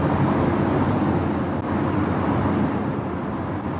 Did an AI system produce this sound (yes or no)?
no